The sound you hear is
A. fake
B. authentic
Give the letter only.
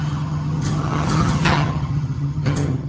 A